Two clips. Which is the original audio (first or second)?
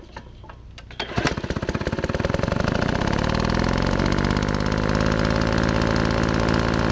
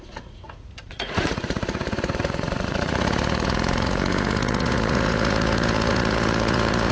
first